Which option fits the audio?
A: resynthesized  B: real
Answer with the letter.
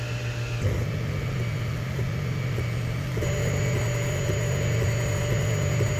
B